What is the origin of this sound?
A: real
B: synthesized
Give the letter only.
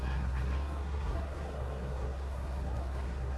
B